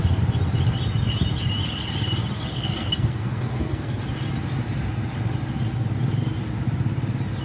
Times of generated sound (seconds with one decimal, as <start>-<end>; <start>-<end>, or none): 2.5-4.0

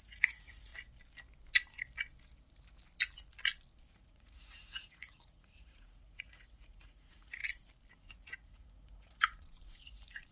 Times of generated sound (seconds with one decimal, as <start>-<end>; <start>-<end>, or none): 0.0-0.7; 3.9-7.4; 7.9-10.3

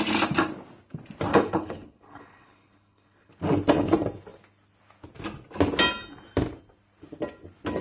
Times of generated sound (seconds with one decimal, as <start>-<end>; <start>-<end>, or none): 1.3-3.3

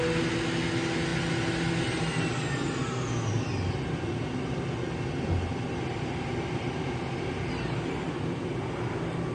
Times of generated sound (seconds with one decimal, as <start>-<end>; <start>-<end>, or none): none

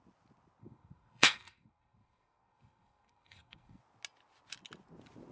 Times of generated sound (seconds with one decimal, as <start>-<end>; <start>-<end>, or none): 0.6-3.8

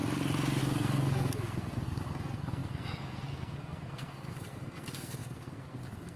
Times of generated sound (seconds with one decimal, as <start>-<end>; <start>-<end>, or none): 0.6-6.2